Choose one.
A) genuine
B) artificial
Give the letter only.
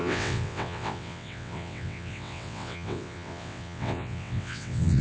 B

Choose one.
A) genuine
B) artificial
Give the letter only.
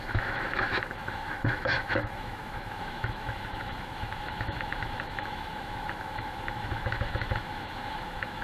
B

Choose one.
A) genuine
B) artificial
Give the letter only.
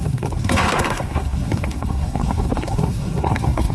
B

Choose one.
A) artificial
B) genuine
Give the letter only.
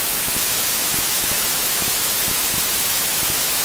A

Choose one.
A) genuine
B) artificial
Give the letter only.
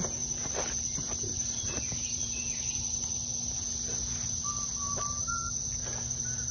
A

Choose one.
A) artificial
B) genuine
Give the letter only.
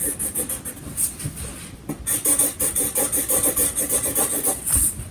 B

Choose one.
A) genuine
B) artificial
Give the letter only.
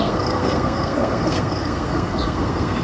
B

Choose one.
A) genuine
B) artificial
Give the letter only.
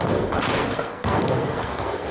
B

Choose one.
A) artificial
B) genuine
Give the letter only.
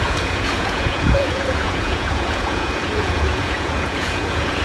A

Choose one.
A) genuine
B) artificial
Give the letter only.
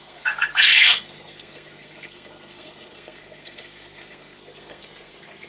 B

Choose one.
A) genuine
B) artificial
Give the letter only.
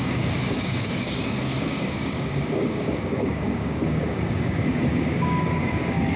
B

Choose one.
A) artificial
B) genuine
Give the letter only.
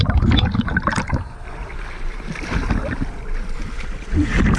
B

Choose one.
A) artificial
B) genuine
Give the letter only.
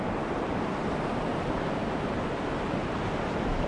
A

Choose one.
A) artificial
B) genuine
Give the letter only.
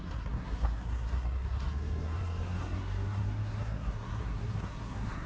A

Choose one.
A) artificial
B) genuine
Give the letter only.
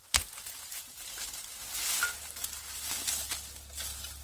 B